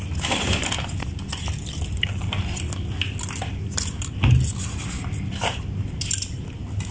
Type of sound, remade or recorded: recorded